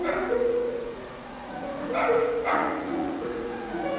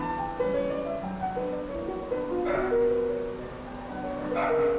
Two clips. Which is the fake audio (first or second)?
first